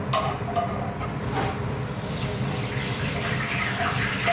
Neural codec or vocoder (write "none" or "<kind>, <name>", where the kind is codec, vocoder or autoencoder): vocoder, BigVGAN v2